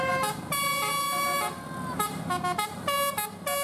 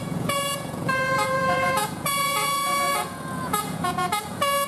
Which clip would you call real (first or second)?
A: first